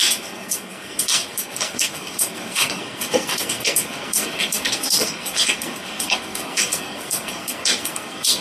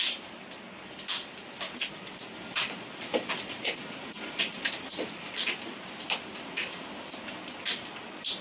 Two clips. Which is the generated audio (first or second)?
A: first